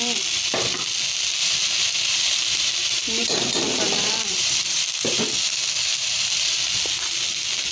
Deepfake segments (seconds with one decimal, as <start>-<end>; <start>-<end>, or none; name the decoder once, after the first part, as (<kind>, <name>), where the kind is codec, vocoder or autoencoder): 1.4-5.2 (vocoder, BigVGAN v2); 5.9-6.5

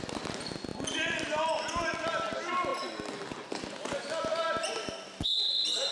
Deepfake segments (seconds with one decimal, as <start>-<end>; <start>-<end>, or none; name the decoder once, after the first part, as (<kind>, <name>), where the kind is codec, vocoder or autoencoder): none

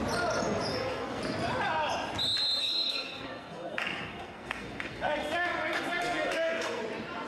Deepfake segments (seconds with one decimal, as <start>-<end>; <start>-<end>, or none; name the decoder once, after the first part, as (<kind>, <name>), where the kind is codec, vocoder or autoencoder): 0.7-1.2 (codec, SNAC); 2.6-6.8

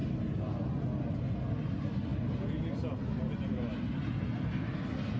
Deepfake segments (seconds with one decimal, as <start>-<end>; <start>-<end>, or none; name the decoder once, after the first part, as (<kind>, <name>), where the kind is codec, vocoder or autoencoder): none

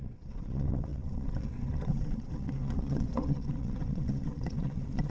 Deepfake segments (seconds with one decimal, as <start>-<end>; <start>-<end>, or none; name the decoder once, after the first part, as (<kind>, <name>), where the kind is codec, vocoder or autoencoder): 0.0-5.1 (vocoder, WaveNeXt)

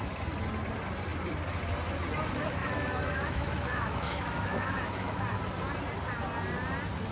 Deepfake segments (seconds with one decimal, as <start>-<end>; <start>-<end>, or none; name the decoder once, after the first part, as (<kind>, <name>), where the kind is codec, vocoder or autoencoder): 2.6-5.2 (autoencoder, DAC-VAE)